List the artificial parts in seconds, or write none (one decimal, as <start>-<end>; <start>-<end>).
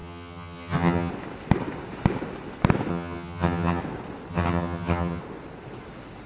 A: 0.0-1.1; 2.9-3.8; 4.3-5.2